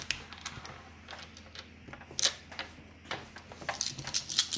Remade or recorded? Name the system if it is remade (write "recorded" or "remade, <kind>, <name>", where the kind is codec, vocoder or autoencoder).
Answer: recorded